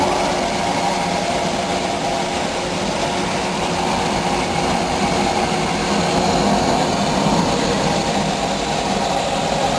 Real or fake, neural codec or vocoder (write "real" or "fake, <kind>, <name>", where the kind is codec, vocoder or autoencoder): real